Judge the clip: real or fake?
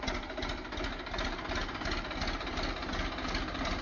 real